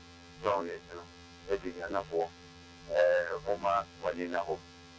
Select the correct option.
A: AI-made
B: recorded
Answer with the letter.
A